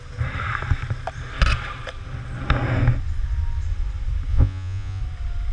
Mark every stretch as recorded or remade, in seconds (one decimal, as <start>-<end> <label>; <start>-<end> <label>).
0.0-4.3 recorded; 4.3-5.0 remade; 5.0-5.5 recorded